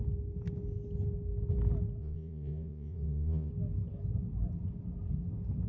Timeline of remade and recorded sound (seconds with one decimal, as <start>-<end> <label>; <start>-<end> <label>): 0.0-2.0 recorded; 2.0-3.5 remade; 3.5-5.7 recorded